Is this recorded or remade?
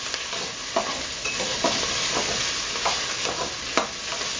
recorded